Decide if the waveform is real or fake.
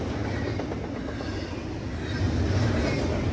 real